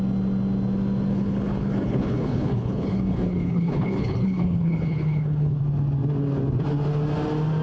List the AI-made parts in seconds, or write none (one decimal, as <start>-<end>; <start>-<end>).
1.1-5.6

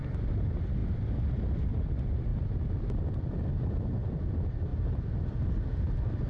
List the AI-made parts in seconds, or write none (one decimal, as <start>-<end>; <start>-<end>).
2.3-3.7; 4.7-5.8

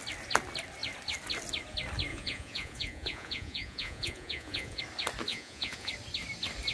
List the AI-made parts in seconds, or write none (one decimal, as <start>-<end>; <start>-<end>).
2.1-4.8; 5.3-5.9

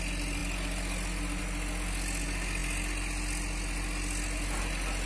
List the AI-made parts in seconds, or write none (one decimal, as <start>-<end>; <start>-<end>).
none

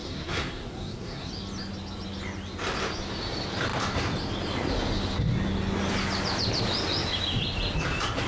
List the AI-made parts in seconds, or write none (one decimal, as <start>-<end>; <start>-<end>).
0.0-1.3

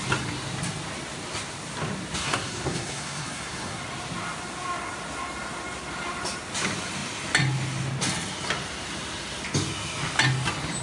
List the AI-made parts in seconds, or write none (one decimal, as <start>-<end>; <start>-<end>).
2.2-3.8